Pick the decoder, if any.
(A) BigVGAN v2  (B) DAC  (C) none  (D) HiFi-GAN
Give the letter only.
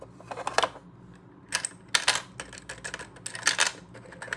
C